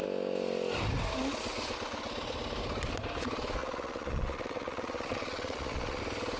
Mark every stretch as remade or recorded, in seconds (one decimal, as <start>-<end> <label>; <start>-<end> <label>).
0.0-3.6 recorded; 3.6-6.0 remade; 6.0-6.4 recorded